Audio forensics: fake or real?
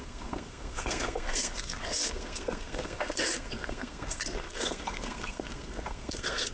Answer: fake